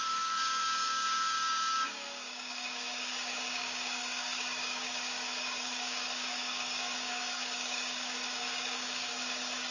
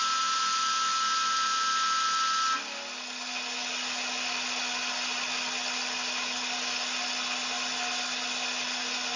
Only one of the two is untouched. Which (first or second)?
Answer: second